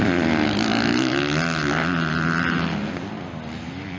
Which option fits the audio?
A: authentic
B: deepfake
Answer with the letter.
A